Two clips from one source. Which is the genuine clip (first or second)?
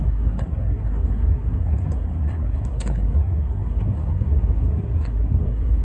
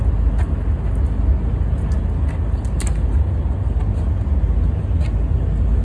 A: second